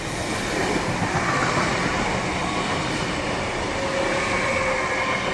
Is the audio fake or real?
real